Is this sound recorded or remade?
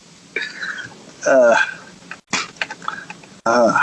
recorded